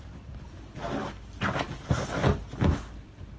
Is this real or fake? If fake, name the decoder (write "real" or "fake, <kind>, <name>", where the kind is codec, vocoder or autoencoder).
real